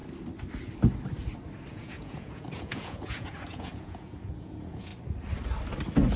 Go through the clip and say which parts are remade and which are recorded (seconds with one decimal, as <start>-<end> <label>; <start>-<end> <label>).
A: 0.0-1.7 recorded; 1.7-4.9 remade; 4.9-6.2 recorded